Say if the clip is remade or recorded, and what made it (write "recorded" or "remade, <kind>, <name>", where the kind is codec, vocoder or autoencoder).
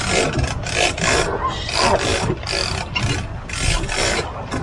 recorded